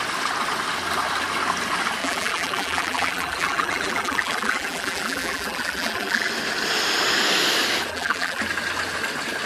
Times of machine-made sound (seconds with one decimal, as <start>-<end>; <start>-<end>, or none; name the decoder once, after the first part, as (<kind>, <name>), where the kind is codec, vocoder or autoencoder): 2.0-6.3 (vocoder, BigVGAN v2); 7.9-8.4